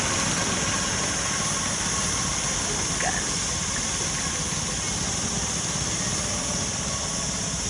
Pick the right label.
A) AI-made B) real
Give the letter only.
B